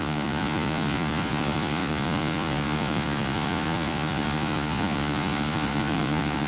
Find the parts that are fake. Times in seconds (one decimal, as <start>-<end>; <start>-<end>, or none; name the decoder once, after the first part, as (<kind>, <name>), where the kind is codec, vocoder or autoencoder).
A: 0.0-6.5 (vocoder, Vocos)